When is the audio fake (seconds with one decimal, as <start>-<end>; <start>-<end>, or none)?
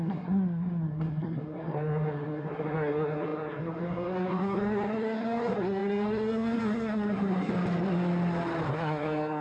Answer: 0.0-7.5; 8.7-9.4